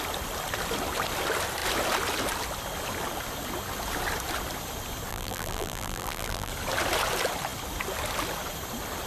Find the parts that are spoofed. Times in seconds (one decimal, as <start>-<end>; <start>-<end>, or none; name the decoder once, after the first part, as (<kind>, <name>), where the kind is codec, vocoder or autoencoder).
5.1-6.5 (vocoder, BigVGAN v2)